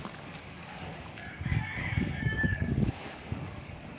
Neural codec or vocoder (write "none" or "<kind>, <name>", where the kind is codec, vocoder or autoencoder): codec, DAC